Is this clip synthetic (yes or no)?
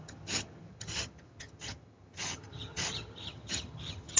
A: yes